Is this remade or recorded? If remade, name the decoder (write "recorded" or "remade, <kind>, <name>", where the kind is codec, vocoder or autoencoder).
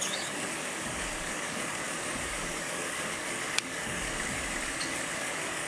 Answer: remade, codec, DAC